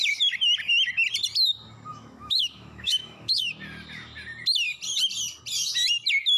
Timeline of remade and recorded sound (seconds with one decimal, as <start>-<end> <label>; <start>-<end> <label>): 0.0-1.9 recorded; 1.9-3.5 remade; 3.5-6.4 recorded